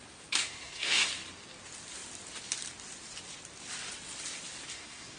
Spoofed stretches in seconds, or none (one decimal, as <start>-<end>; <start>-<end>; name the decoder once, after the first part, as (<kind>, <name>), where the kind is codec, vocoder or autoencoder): 0.4-1.1 (codec, SNAC); 4.7-5.2